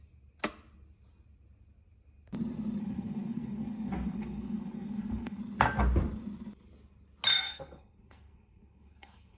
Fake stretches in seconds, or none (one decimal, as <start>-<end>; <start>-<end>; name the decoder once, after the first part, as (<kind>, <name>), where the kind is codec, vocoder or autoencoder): 2.8-5.4 (codec, SNAC); 7.3-9.4